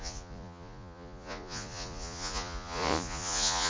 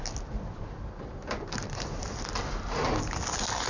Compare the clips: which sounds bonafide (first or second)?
second